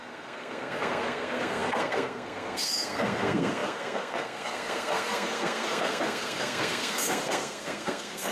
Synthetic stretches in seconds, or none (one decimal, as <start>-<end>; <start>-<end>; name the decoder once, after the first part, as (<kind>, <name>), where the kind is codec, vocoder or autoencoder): 0.0-8.3 (codec, SNAC)